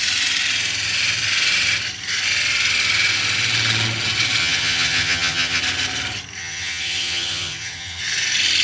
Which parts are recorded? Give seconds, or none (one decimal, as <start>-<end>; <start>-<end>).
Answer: 0.0-4.4; 5.6-6.4; 8.0-8.6